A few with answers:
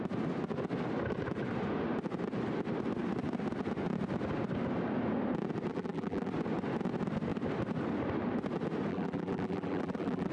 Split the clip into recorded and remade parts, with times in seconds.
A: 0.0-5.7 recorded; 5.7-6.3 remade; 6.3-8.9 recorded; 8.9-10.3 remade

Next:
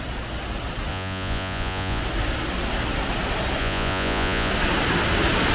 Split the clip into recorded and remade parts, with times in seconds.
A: 0.0-0.9 recorded; 0.9-2.0 remade; 2.0-3.6 recorded; 3.6-4.5 remade; 4.5-5.5 recorded

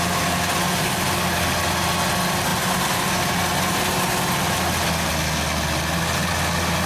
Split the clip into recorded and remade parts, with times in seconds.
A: 0.0-6.9 recorded

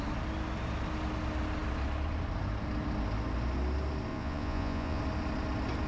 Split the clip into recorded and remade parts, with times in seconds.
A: 0.0-4.1 recorded; 4.1-5.0 remade; 5.0-5.9 recorded

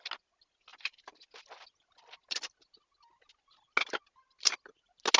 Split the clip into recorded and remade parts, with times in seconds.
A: 0.0-0.7 recorded; 0.7-1.3 remade; 1.3-5.2 recorded

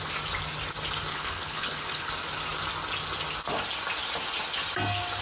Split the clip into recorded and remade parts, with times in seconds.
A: 0.0-1.1 recorded; 1.1-2.1 remade; 2.1-5.2 recorded